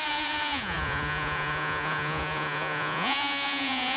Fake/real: fake